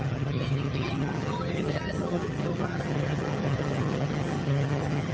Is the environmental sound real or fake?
fake